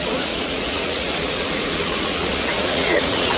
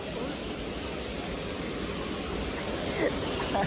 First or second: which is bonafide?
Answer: second